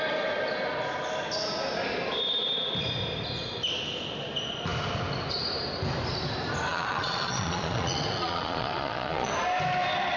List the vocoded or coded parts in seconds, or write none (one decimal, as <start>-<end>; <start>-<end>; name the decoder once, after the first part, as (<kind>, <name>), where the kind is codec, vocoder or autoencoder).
6.7-9.3 (vocoder, Vocos)